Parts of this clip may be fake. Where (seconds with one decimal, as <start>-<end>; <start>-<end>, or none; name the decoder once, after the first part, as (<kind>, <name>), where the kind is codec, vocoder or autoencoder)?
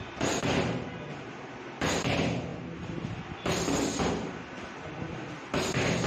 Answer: none